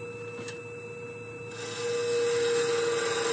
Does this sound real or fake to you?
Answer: real